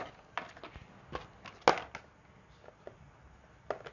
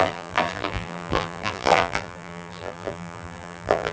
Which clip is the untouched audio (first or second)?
first